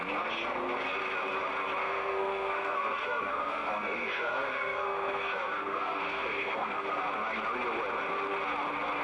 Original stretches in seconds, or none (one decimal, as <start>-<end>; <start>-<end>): 0.0-1.8; 7.0-9.0